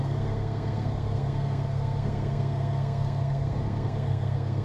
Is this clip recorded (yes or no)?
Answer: no